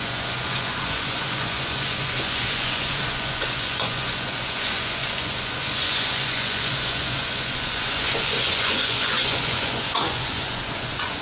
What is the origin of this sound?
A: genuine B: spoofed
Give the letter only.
B